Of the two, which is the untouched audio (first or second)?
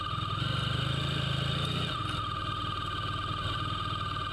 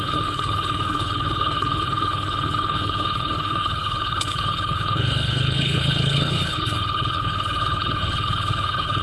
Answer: first